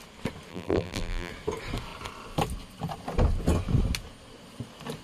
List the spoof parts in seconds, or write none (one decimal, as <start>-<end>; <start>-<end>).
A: 0.5-1.3